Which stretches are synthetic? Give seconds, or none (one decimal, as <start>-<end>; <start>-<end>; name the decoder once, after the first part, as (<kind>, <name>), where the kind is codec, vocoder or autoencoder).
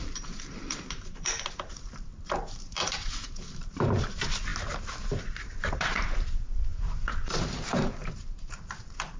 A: 0.0-4.5 (vocoder, BigVGAN v2); 5.2-9.2